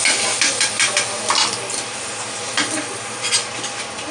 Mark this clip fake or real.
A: real